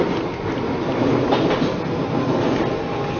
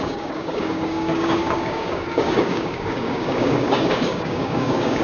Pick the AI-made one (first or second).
second